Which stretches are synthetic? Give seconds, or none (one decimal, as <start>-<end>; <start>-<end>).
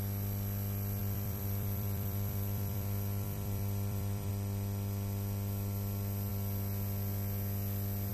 1.0-4.3